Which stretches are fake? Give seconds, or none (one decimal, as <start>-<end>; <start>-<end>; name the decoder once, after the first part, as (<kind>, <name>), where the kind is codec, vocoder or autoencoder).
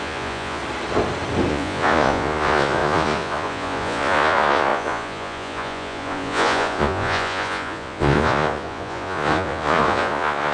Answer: 0.0-0.6 (vocoder, Vocos); 1.5-10.5